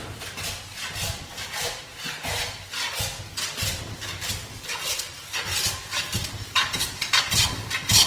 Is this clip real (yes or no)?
yes